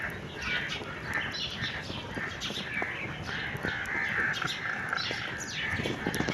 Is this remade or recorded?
recorded